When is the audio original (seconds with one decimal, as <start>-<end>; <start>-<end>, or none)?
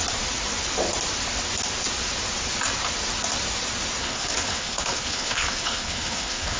0.0-4.0